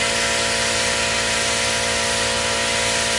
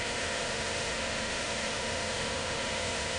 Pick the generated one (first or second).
second